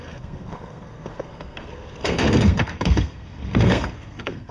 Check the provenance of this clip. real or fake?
fake